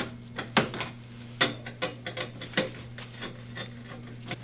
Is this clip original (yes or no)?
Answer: yes